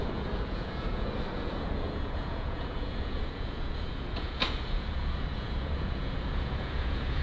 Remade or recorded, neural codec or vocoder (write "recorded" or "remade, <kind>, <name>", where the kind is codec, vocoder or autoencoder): remade, vocoder, Vocos